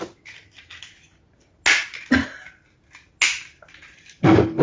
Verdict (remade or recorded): recorded